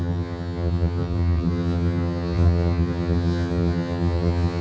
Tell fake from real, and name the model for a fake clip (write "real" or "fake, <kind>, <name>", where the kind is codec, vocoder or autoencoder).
fake, vocoder, HiFi-GAN